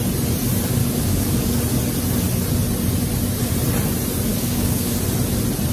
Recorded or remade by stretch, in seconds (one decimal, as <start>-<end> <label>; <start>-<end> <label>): 0.0-0.8 recorded; 0.8-1.6 remade; 1.6-4.3 recorded; 4.3-5.0 remade; 5.0-5.7 recorded